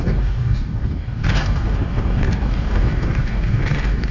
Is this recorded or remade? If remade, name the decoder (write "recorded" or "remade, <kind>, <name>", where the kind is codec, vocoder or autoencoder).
remade, codec, DAC